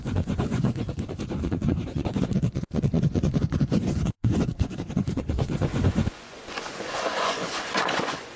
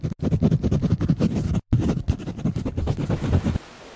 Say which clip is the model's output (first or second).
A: first